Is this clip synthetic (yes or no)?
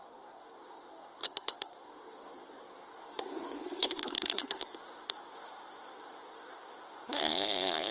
yes